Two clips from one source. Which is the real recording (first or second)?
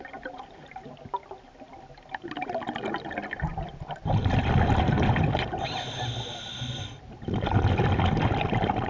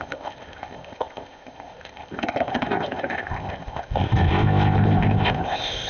first